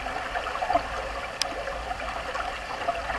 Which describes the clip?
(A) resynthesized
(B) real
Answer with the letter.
B